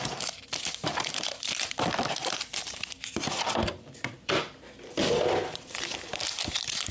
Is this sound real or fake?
fake